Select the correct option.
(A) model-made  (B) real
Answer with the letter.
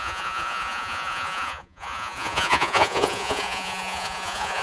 A